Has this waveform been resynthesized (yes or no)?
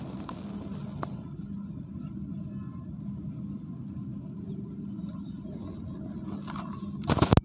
no